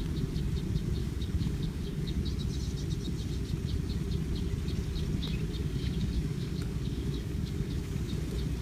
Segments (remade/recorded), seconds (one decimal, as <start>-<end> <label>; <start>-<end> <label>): 0.0-1.0 recorded; 1.0-2.2 remade; 2.2-5.6 recorded; 5.6-8.2 remade; 8.2-8.6 recorded